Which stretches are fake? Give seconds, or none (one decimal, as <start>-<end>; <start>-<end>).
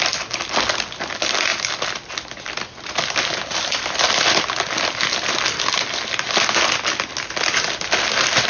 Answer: none